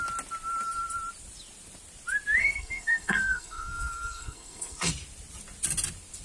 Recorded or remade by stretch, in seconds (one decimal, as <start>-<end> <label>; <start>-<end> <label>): 0.0-2.4 recorded; 2.4-4.9 remade; 4.9-6.2 recorded